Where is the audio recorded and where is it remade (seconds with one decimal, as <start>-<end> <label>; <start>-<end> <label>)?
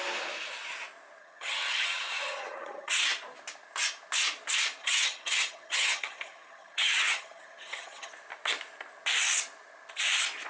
0.0-1.2 recorded; 1.2-2.9 remade; 2.9-4.8 recorded; 4.8-8.1 remade; 8.1-10.5 recorded